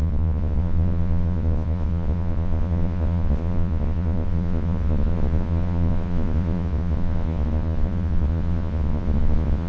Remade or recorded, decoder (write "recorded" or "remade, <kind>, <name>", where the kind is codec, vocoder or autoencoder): remade, vocoder, Vocos